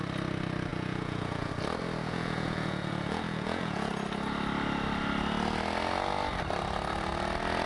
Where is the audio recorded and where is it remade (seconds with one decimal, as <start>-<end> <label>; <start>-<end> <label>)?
0.0-0.7 recorded; 0.7-1.5 remade; 1.5-2.0 recorded; 2.0-3.9 remade; 3.9-7.7 recorded